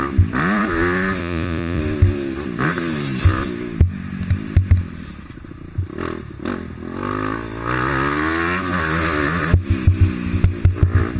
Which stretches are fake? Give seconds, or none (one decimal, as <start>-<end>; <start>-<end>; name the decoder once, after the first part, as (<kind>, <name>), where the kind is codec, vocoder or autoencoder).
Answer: 1.2-1.8 (vocoder, Vocos)